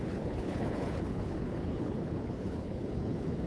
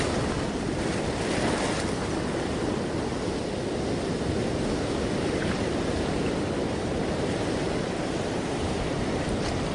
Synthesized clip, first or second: first